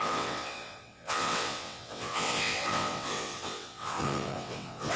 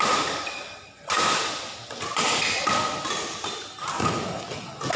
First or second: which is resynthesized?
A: first